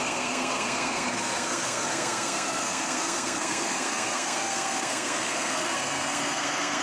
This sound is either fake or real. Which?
fake